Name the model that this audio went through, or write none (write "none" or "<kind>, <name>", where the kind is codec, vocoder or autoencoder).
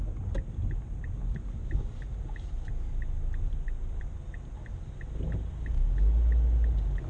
none